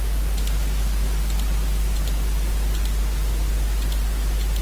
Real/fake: real